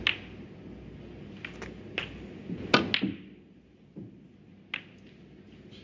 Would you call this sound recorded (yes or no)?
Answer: yes